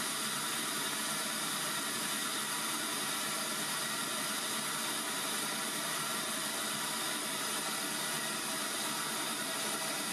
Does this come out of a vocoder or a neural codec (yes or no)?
no